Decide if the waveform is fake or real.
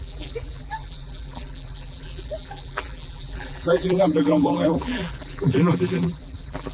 fake